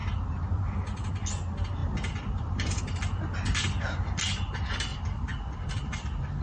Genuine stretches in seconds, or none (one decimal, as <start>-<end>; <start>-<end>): 0.0-1.8; 2.8-4.9